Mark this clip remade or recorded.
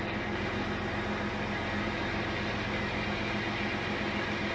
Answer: recorded